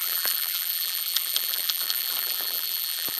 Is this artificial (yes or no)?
yes